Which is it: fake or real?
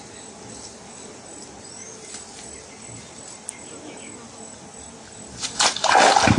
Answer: real